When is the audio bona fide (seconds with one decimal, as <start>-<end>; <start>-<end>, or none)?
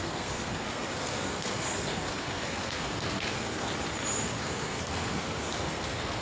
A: 3.7-4.4